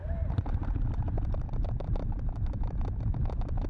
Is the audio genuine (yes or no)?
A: yes